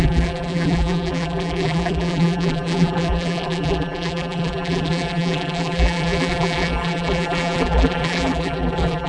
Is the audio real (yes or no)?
no